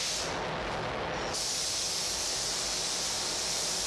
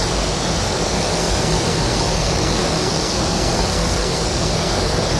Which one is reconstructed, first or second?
second